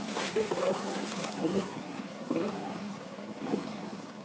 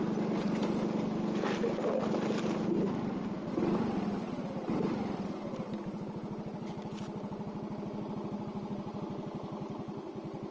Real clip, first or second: second